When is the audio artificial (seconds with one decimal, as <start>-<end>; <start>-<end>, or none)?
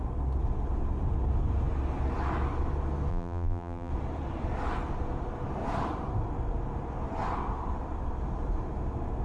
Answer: 3.1-3.9